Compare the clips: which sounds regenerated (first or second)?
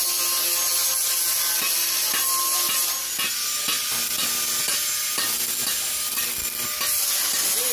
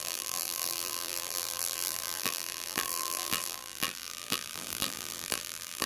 second